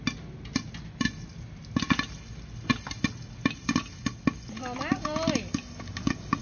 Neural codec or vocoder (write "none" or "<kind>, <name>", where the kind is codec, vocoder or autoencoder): none